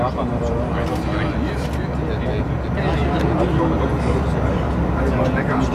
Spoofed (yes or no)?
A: no